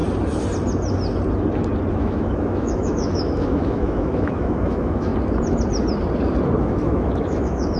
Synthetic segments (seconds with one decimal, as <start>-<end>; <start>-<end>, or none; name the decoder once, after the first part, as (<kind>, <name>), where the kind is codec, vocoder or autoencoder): 1.9-5.1 (autoencoder, DAC-VAE); 6.6-7.8